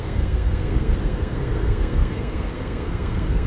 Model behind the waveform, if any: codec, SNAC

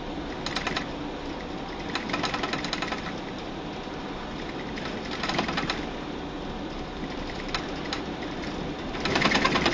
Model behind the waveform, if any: none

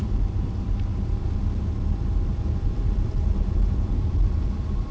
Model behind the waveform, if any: vocoder, BigVGAN v2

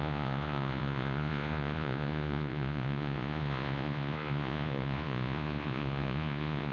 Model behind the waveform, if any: vocoder, Vocos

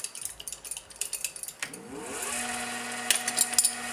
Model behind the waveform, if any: none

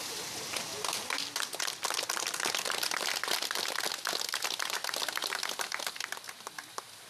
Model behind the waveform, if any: none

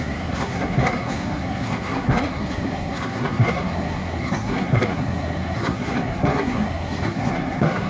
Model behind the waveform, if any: codec, SNAC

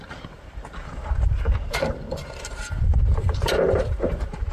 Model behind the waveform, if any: vocoder, BigVGAN v2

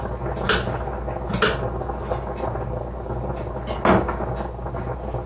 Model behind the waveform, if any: none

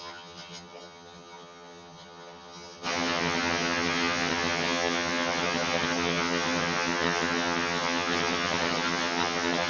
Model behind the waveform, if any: vocoder, HiFi-GAN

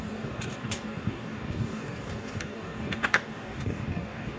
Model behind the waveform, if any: codec, DAC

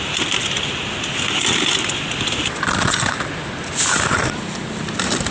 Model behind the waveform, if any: none